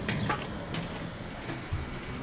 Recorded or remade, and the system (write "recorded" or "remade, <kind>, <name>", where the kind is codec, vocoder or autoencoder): recorded